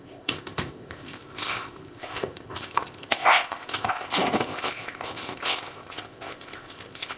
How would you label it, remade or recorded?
remade